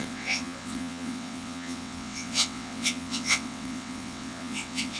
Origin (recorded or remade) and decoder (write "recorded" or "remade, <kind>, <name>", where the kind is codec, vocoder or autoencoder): remade, vocoder, WaveNeXt